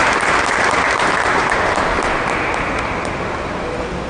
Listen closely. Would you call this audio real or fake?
real